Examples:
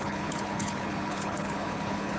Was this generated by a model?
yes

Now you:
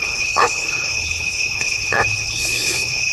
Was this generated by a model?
yes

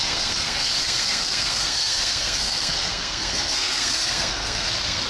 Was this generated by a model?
yes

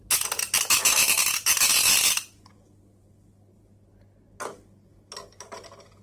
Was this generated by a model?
no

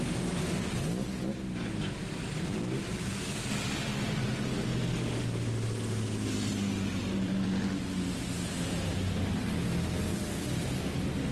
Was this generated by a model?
no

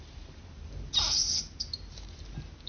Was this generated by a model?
yes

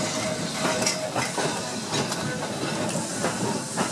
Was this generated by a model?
no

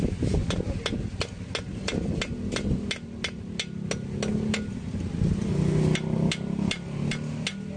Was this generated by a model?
no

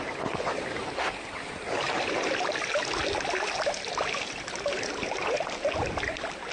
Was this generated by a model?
no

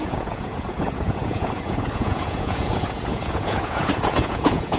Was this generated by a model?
yes